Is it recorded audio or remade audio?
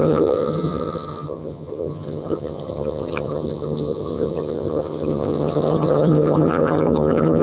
remade